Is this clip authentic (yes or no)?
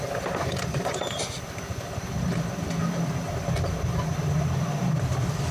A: yes